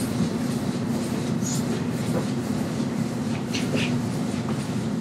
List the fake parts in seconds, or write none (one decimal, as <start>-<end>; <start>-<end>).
0.9-3.9